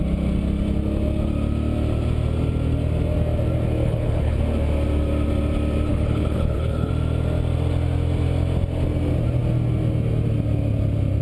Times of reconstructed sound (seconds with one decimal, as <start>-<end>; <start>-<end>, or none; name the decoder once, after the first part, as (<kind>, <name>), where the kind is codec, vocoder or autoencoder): 3.8-4.4 (codec, HILCodec); 5.9-6.9